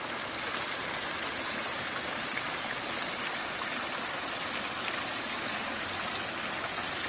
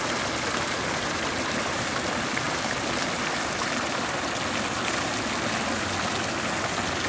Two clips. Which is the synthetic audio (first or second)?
first